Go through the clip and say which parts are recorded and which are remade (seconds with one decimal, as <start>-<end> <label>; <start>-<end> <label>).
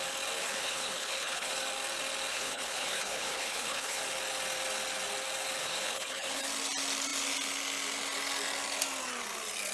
0.0-0.4 recorded; 0.4-1.5 remade; 1.5-2.3 recorded; 2.3-4.0 remade; 4.0-5.6 recorded; 5.6-6.4 remade; 6.4-9.7 recorded